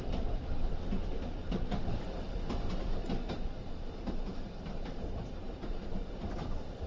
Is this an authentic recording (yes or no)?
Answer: no